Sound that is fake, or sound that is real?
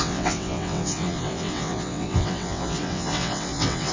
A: fake